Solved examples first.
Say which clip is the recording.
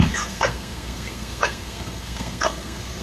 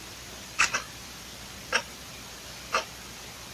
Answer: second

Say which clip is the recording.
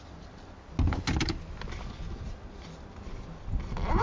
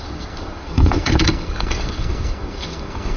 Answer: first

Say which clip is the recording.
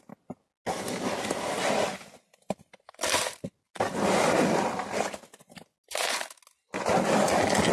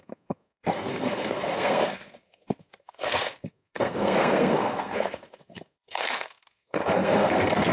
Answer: first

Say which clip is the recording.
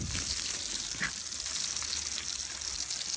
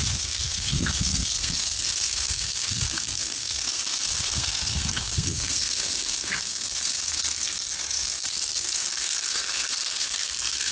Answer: first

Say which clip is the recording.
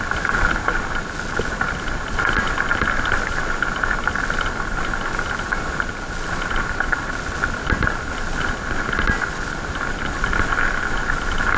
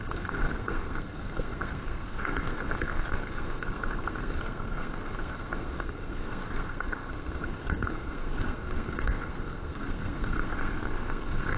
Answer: first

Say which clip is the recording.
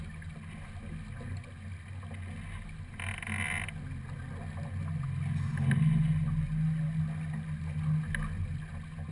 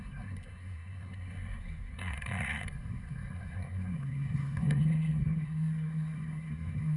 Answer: first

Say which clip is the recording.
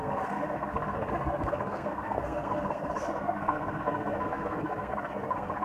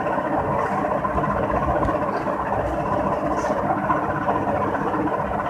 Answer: second